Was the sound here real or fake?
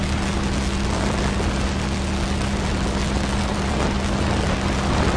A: real